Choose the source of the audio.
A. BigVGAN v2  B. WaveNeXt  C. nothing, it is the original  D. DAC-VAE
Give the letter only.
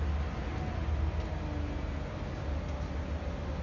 C